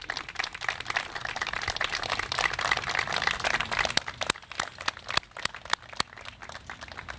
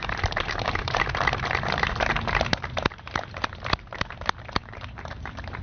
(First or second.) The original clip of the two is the first